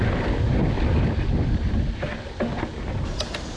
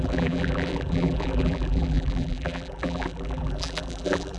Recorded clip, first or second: first